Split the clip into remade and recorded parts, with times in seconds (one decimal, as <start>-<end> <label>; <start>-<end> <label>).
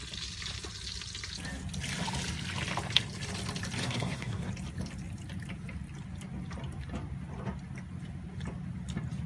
0.0-3.8 recorded; 3.8-4.5 remade; 4.5-9.3 recorded